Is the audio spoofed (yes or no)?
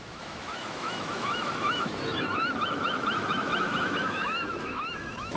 yes